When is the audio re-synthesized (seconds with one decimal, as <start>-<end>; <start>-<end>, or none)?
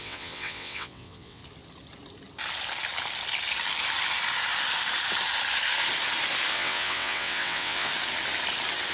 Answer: 0.0-1.4; 6.5-7.9